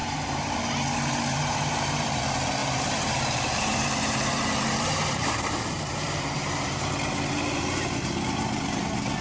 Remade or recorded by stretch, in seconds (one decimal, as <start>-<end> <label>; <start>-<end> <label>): 0.0-2.2 remade; 2.2-2.6 recorded; 2.6-6.9 remade; 6.9-9.2 recorded